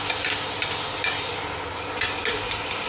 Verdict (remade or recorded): recorded